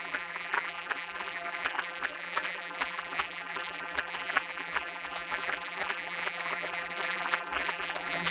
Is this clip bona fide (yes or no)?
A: no